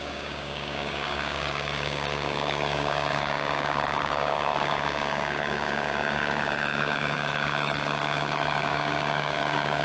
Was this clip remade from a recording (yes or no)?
yes